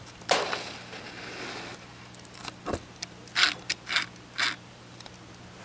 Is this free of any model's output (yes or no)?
yes